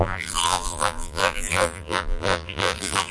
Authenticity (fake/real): fake